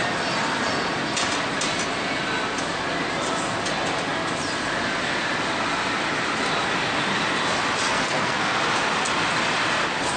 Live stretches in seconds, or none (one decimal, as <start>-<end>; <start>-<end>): 0.0-7.9; 8.6-10.2